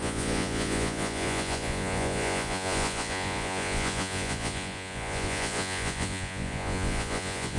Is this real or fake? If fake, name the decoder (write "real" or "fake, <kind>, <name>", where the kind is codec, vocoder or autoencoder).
fake, vocoder, Vocos